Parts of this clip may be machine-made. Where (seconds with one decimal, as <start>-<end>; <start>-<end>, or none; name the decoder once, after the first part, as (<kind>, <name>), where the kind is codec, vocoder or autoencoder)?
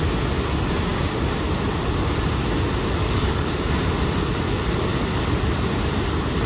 3.0-3.7 (codec, DAC)